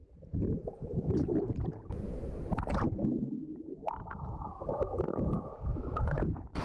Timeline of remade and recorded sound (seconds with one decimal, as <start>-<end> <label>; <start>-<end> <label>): 0.0-5.7 recorded; 5.7-6.6 remade